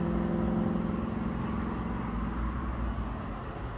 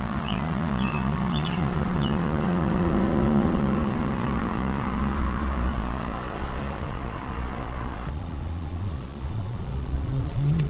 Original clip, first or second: first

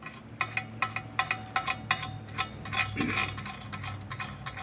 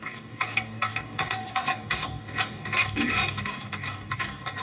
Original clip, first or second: first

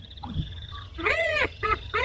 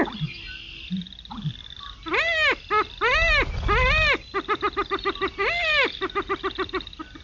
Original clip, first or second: second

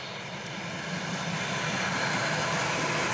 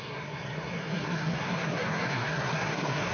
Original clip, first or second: first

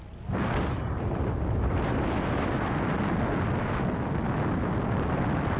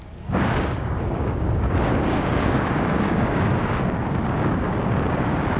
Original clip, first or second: first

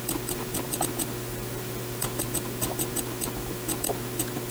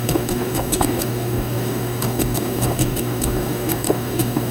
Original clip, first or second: first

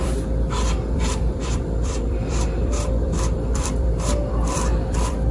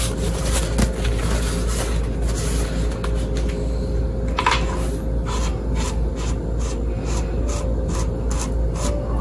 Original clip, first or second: second